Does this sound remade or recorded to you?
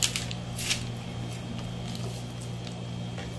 recorded